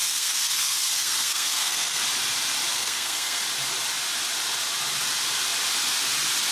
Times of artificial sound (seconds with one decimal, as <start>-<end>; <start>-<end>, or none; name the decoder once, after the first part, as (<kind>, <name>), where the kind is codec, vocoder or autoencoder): 0.0-2.0 (codec, SNAC); 2.7-3.4